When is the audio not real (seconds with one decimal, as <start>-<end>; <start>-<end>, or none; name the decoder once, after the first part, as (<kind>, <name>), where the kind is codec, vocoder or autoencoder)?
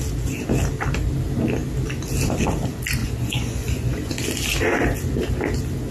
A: 3.0-4.1 (vocoder, Vocos)